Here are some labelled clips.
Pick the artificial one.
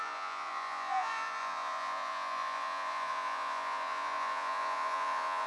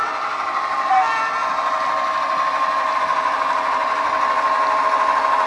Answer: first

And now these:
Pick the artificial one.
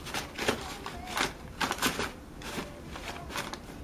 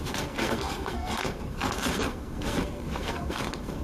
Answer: second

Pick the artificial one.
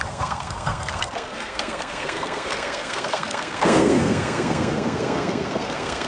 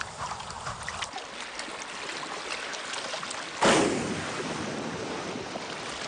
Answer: first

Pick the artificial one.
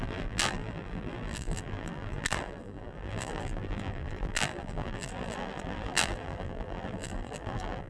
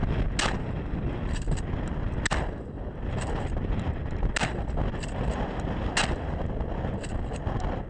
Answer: first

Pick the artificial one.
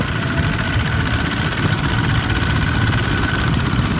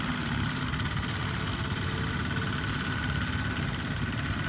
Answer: first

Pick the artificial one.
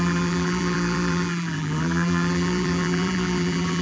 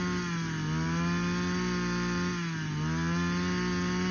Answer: first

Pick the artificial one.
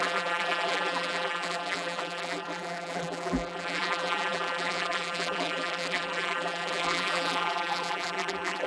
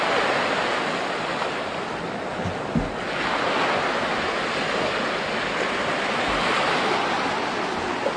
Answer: first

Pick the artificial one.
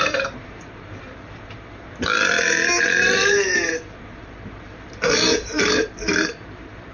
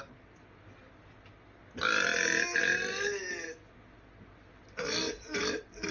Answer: first